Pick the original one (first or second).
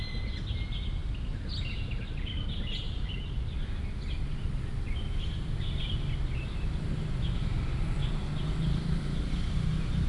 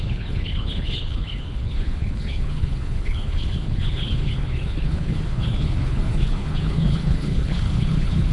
first